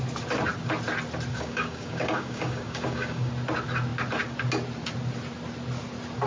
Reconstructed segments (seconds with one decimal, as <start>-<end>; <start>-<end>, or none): 1.3-3.3